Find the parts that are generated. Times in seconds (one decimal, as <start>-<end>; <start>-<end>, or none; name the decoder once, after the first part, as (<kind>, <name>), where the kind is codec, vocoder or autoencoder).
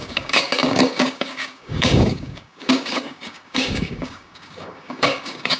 0.0-5.6 (codec, DAC)